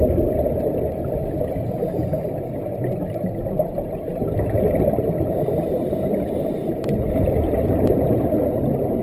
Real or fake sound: real